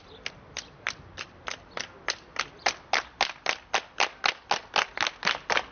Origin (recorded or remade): recorded